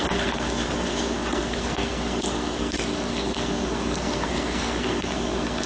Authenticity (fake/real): fake